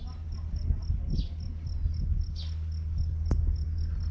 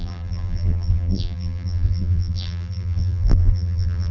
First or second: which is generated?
second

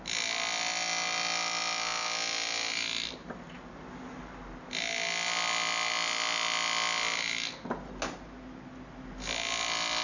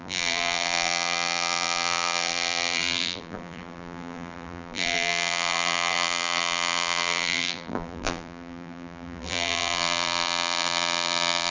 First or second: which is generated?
second